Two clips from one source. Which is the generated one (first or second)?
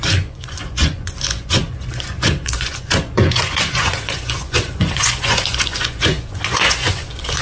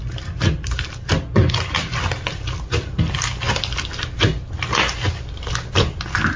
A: first